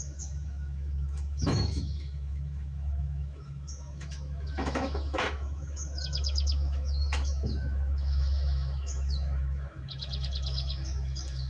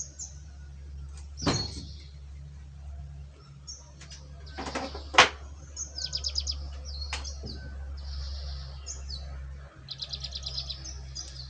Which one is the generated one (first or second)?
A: first